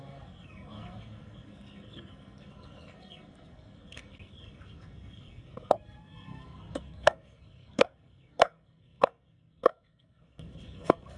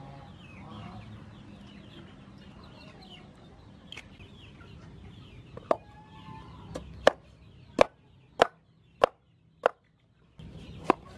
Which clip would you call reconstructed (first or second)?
first